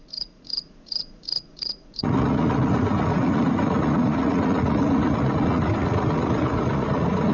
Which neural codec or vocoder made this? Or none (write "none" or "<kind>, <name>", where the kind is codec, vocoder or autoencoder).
vocoder, Vocos